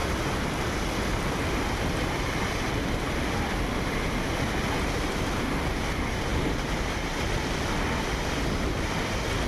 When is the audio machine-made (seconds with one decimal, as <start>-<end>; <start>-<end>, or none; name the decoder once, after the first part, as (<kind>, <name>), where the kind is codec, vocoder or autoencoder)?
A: none